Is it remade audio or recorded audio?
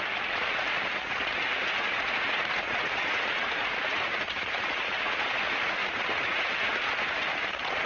remade